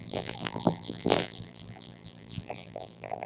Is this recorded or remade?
remade